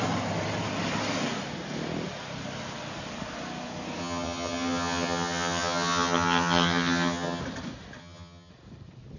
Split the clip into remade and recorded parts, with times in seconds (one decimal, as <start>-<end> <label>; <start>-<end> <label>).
0.0-4.0 recorded; 4.0-7.4 remade; 7.4-8.0 recorded; 8.0-8.5 remade; 8.5-9.2 recorded